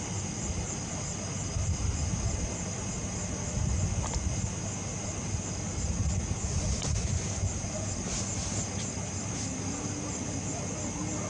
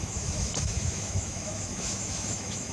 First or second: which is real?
first